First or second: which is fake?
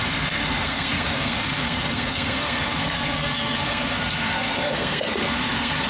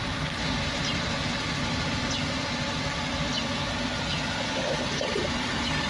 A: first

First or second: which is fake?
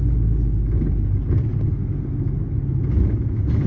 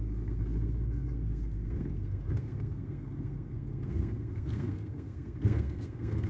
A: second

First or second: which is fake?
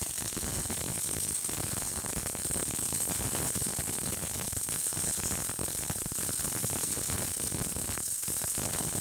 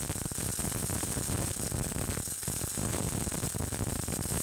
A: first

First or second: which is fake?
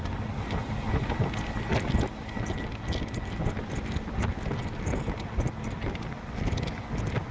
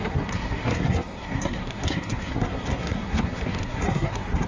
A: second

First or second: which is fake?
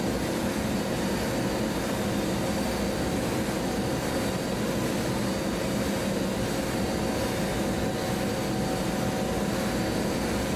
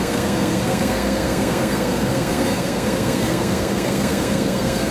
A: second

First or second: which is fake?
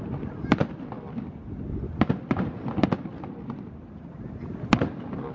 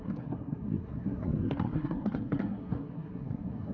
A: second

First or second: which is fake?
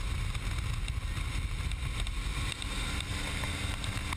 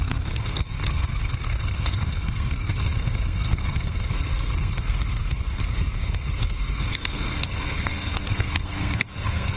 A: second